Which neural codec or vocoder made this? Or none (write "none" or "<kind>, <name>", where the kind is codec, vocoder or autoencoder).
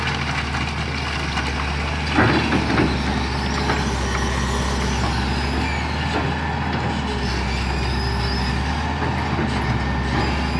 none